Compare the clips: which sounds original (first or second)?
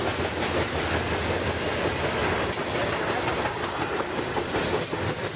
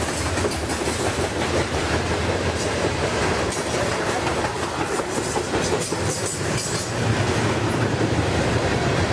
first